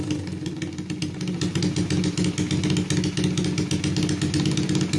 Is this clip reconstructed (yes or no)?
no